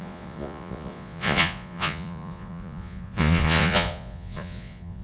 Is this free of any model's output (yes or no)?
no